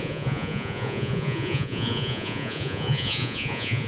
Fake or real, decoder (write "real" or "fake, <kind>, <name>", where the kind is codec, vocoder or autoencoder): fake, vocoder, Vocos